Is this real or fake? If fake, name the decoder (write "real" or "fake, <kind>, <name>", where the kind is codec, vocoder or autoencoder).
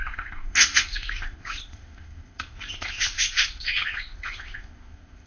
fake, codec, ZipCodec